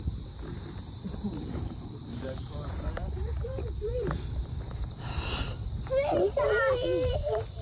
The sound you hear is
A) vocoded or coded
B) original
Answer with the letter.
A